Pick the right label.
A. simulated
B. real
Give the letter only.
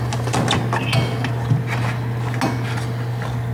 B